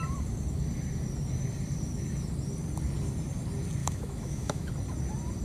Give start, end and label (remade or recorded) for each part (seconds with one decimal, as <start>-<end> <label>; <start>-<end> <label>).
0.0-3.8 recorded; 3.8-4.7 remade; 4.7-5.4 recorded